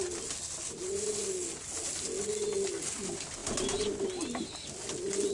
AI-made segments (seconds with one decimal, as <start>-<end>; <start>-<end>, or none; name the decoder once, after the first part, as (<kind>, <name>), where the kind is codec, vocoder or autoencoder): none